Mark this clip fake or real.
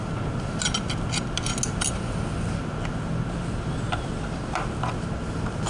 real